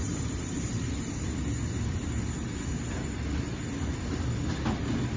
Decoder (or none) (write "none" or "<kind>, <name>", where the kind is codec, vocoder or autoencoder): vocoder, BigVGAN v2